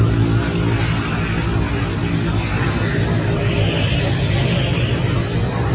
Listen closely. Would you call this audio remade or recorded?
recorded